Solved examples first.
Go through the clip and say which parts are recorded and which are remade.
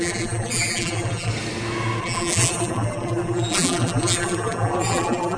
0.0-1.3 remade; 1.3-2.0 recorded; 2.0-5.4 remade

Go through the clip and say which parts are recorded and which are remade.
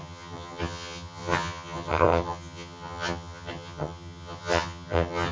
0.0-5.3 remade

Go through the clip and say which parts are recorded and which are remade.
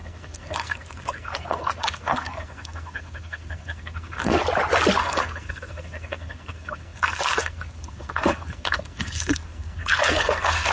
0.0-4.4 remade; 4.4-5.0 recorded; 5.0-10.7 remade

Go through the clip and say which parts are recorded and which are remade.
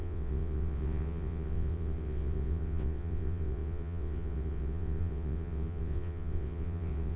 0.0-7.2 remade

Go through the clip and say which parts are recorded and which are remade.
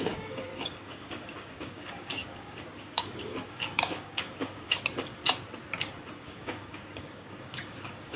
0.0-5.2 remade; 5.2-6.2 recorded; 6.2-8.2 remade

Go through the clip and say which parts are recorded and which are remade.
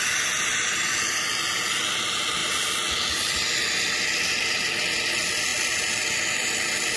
0.0-7.0 recorded